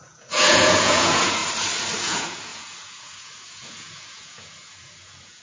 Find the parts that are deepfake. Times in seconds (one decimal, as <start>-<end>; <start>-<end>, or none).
0.0-1.4; 2.0-5.4